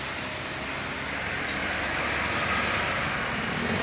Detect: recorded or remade recorded